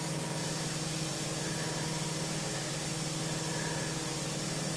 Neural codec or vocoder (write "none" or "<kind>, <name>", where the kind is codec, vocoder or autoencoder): none